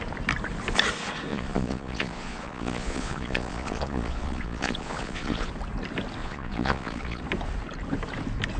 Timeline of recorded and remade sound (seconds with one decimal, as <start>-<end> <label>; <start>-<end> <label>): 0.0-1.3 recorded; 1.3-5.5 remade; 5.5-6.2 recorded; 6.2-7.2 remade; 7.2-8.6 recorded